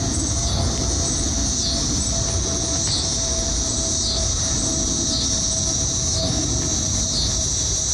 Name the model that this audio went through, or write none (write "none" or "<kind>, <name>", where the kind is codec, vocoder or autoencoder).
none